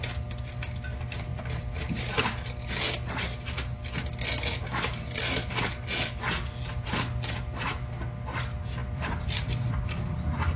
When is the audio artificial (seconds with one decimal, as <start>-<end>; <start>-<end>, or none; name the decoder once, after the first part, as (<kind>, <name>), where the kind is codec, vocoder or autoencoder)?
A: 1.3-1.8 (vocoder, BigVGAN v2); 8.8-9.8